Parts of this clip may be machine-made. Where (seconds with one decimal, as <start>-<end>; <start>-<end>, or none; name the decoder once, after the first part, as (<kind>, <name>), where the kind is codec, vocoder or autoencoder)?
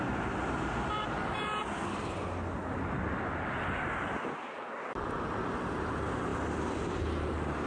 0.0-1.6 (vocoder, BigVGAN v2); 5.4-6.3; 6.8-7.7